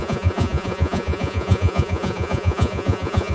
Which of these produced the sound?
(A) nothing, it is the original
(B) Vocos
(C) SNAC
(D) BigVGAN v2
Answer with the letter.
B